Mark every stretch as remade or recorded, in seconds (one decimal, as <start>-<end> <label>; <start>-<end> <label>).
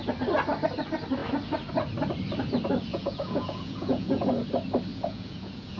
0.0-2.9 recorded; 2.9-4.3 remade; 4.3-4.9 recorded; 4.9-5.8 remade